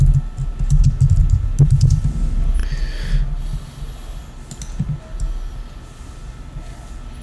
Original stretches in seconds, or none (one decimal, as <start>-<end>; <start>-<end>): 0.0-7.2